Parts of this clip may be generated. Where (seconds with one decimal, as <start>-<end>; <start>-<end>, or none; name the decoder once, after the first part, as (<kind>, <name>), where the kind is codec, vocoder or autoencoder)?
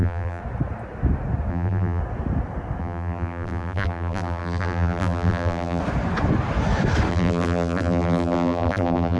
0.0-0.4 (vocoder, BigVGAN v2); 1.5-2.0; 2.8-5.8; 7.1-9.2